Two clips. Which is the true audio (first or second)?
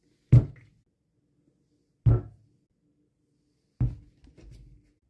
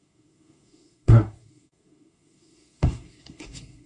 first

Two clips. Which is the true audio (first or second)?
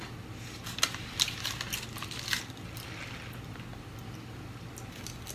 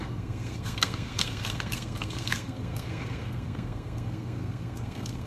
first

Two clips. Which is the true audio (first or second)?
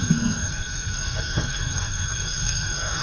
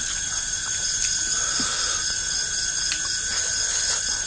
second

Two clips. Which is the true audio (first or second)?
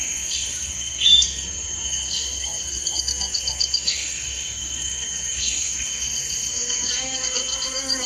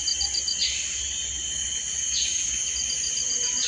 second